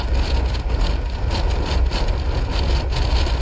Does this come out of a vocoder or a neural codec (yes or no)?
no